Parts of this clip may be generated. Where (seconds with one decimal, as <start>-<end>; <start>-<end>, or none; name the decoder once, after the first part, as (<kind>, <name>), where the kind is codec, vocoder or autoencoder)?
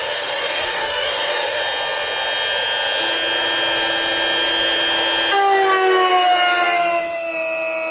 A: 0.0-1.6 (codec, DAC)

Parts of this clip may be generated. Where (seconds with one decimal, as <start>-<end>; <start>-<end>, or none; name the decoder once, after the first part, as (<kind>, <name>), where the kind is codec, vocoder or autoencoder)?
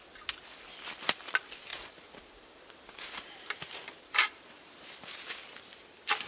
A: 1.7-5.3 (vocoder, BigVGAN v2)